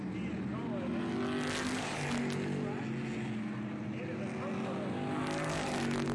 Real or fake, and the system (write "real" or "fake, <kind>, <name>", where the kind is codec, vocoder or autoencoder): real